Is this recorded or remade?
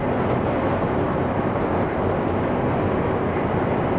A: recorded